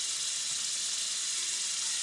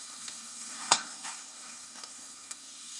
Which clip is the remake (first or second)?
second